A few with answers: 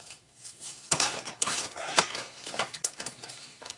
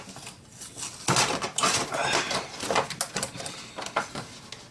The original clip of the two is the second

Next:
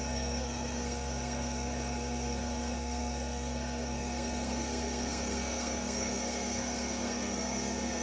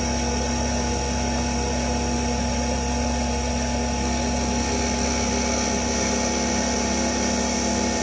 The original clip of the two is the second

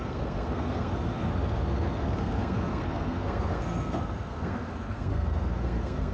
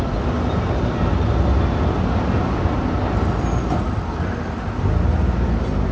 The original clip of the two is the second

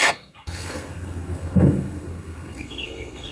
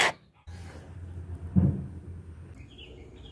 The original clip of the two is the second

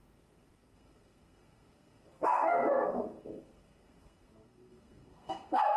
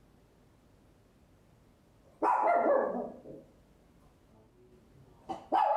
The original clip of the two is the second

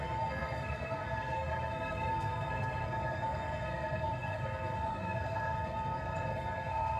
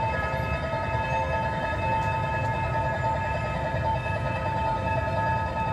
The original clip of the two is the second